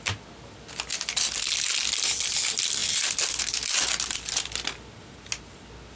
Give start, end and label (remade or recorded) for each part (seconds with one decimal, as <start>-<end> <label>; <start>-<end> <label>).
0.0-6.0 recorded